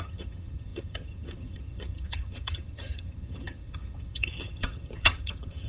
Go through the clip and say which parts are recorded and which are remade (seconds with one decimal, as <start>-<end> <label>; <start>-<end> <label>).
0.0-5.7 remade